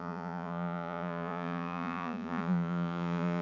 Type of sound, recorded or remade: remade